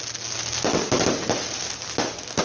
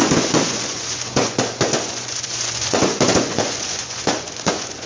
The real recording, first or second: first